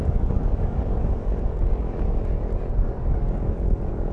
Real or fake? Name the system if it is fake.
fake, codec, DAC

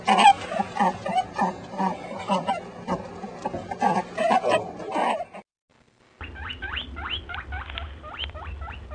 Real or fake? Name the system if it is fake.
real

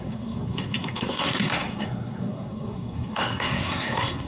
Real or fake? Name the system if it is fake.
fake, codec, SNAC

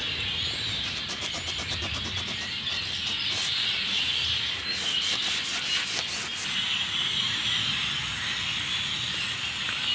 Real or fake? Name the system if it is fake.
real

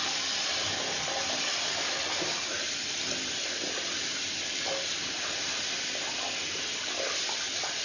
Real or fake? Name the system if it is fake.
real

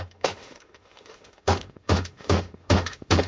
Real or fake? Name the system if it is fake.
fake, autoencoder, DAC-VAE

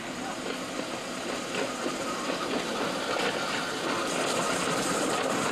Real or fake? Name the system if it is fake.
real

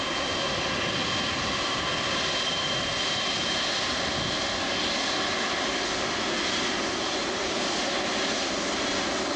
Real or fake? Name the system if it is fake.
real